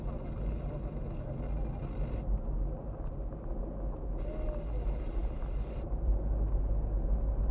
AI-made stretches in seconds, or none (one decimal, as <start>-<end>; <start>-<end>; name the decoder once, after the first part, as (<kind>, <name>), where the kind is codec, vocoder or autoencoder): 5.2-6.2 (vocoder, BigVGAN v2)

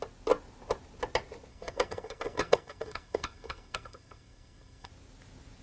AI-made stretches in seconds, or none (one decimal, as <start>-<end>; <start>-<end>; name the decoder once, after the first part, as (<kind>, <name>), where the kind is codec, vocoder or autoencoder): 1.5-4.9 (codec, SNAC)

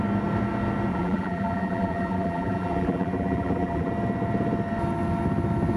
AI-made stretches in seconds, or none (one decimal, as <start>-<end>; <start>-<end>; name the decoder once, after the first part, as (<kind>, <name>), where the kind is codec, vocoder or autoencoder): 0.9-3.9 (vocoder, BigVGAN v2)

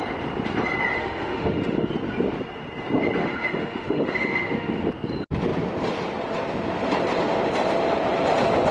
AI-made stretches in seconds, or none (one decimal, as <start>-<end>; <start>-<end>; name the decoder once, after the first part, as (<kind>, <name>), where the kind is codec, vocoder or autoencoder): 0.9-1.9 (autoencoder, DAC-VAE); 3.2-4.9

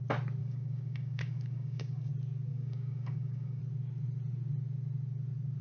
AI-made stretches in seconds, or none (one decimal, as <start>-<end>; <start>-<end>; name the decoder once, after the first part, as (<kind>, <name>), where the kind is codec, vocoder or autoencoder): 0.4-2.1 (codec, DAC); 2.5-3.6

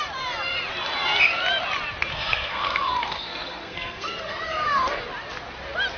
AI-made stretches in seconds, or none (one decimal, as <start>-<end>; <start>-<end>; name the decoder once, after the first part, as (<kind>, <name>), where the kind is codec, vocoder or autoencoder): 2.1-5.0 (codec, SNAC)

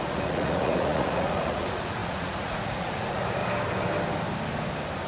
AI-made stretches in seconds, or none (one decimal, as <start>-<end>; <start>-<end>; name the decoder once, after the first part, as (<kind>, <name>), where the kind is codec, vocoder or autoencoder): 0.0-3.4 (vocoder, Vocos)